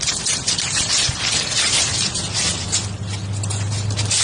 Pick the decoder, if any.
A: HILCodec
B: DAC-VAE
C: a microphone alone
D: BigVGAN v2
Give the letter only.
C